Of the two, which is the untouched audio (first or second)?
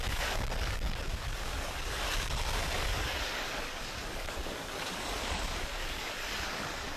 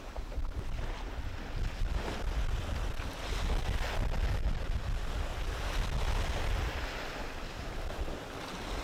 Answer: second